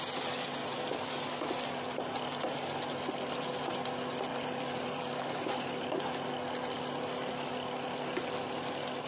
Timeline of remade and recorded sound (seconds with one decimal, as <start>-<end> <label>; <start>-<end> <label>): 0.0-4.3 recorded; 4.3-6.0 remade; 6.0-9.1 recorded